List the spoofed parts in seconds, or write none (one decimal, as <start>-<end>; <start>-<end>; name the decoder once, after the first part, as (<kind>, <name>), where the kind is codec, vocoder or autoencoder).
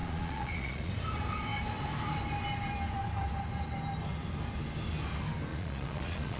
0.0-0.9 (vocoder, Vocos); 5.5-6.4